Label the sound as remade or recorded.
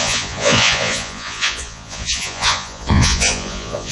remade